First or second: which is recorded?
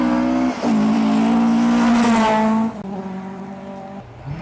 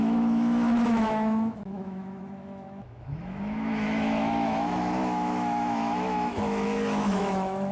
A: first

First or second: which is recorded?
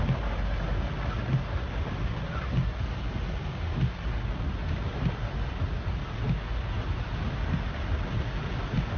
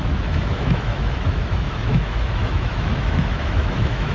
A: first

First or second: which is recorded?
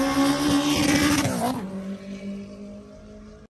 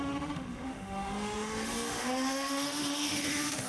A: first